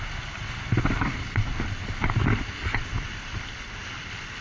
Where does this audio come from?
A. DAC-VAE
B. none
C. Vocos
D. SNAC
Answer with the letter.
B